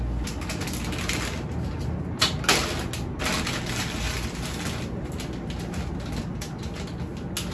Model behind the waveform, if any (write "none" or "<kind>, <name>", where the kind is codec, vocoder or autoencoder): none